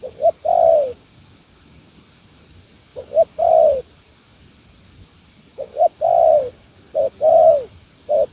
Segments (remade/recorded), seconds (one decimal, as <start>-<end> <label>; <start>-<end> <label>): 0.0-0.7 recorded; 0.7-1.9 remade; 1.9-5.5 recorded; 5.5-7.0 remade; 7.0-8.3 recorded